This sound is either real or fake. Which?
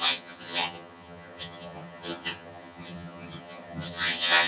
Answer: fake